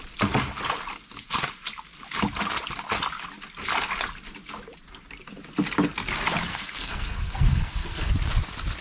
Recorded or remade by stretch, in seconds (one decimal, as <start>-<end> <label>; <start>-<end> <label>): 0.0-6.5 recorded; 6.5-8.1 remade; 8.1-8.8 recorded